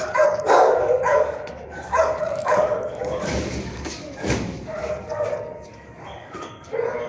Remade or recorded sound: remade